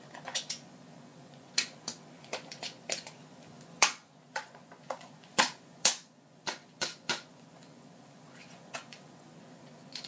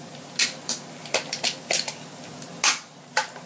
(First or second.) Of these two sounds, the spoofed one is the first